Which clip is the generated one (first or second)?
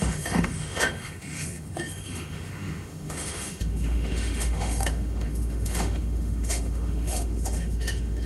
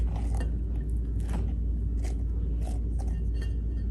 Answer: first